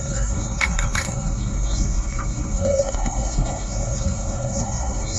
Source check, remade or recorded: remade